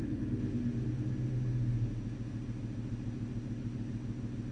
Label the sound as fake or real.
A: real